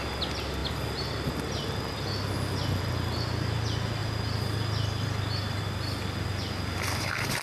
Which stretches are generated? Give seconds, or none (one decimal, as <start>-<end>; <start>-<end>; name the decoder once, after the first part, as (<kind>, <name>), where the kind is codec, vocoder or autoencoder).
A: 4.0-5.7 (vocoder, BigVGAN v2)